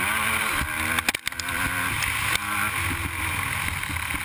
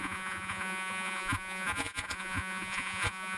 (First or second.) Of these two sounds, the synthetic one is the second